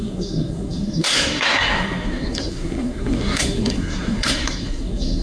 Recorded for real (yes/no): no